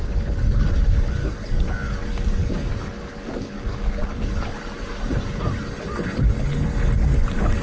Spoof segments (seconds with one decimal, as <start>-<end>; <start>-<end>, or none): 1.2-4.3